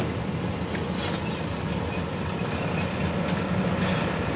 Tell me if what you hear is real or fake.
real